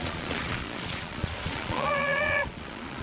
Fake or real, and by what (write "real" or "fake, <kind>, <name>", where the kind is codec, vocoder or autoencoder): fake, vocoder, Vocos